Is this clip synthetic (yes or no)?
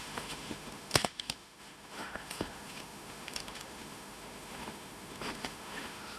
yes